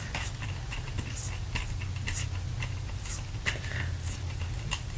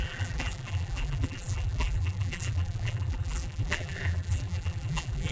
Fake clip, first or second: second